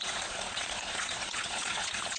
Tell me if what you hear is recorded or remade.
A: remade